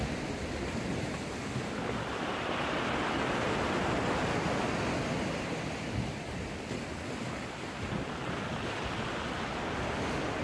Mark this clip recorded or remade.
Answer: recorded